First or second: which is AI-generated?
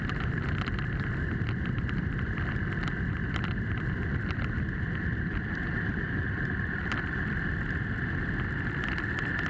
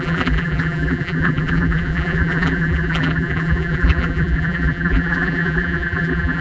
second